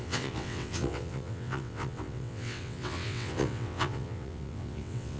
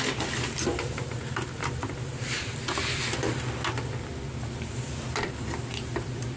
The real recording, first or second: second